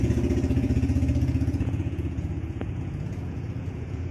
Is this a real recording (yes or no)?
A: no